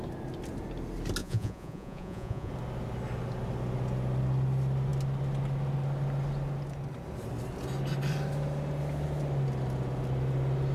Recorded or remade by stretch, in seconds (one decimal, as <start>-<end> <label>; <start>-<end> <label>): 0.0-1.2 recorded; 1.2-2.5 remade; 2.5-10.7 recorded